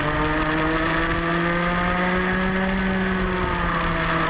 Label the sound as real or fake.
real